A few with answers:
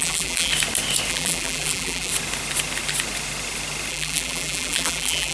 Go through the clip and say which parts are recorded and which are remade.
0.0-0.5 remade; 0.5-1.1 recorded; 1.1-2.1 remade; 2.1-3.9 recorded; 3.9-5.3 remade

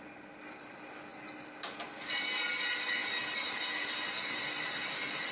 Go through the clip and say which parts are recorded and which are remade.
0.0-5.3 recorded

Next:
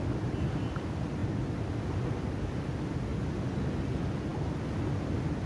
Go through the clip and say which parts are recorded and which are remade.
0.0-5.5 recorded